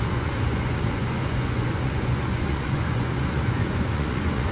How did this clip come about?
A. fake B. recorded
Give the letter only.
A